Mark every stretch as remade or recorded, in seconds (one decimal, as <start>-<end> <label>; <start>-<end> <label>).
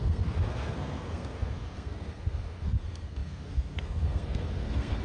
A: 0.0-5.0 remade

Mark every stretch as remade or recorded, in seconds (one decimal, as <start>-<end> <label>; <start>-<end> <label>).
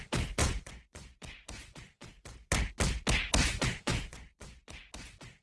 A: 0.0-0.4 recorded; 0.4-2.1 remade; 2.1-3.4 recorded; 3.4-4.9 remade; 4.9-5.4 recorded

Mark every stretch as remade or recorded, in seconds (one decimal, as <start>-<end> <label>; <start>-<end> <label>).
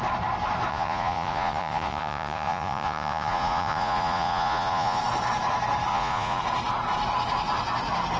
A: 0.0-0.7 recorded; 0.7-5.0 remade; 5.0-5.9 recorded; 5.9-6.4 remade; 6.4-8.2 recorded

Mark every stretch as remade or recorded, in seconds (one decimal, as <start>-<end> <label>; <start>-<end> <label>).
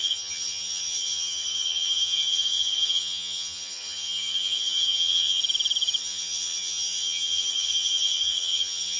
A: 0.0-5.4 remade; 5.4-6.0 recorded; 6.0-9.0 remade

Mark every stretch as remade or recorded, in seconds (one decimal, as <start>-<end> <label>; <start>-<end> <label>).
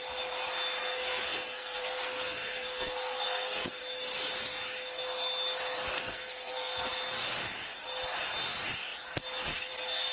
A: 0.0-0.8 recorded; 0.8-3.8 remade; 3.8-5.9 recorded; 5.9-6.9 remade; 6.9-10.1 recorded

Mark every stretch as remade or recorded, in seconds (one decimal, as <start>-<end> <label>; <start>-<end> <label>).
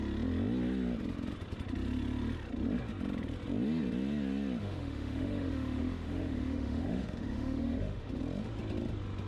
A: 0.0-4.6 recorded; 4.6-8.2 remade; 8.2-9.3 recorded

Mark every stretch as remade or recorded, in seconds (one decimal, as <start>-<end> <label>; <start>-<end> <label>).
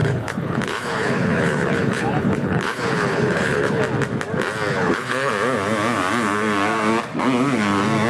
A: 0.0-3.8 remade; 3.8-4.7 recorded; 4.7-5.3 remade; 5.3-8.1 recorded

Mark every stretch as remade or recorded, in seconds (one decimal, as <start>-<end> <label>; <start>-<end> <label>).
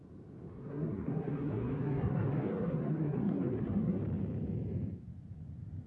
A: 0.0-0.5 recorded; 0.5-4.0 remade; 4.0-5.9 recorded